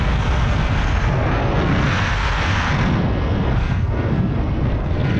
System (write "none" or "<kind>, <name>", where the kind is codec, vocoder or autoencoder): codec, SNAC